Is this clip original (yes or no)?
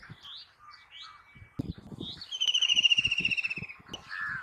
yes